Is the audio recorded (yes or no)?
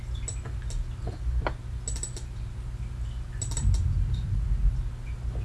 yes